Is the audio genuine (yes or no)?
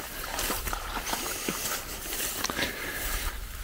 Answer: yes